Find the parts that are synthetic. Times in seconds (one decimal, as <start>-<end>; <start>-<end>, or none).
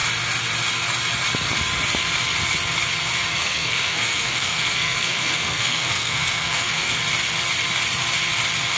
3.3-7.0